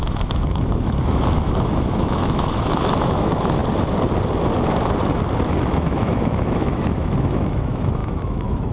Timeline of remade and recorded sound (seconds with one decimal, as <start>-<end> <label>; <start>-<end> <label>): 0.0-3.6 remade; 3.6-5.6 recorded; 5.6-8.7 remade